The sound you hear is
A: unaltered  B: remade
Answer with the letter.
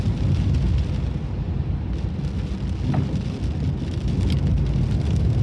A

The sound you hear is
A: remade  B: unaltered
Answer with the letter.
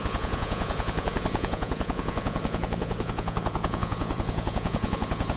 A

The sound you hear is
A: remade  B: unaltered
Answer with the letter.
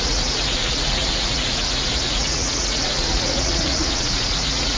A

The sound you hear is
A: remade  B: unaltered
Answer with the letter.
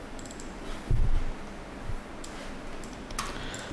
B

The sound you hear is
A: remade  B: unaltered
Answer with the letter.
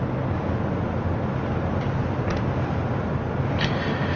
B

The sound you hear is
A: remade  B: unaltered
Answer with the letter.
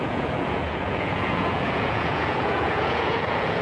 A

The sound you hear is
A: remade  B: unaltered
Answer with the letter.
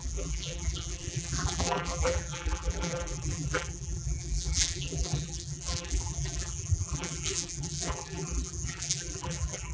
A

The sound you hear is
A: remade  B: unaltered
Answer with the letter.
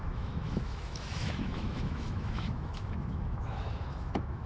A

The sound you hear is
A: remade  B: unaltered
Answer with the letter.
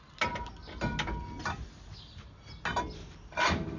B